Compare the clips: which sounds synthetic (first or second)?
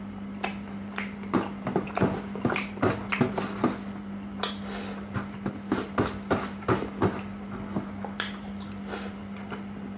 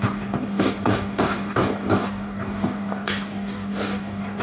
second